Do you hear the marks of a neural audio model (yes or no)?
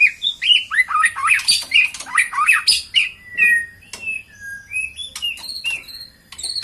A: no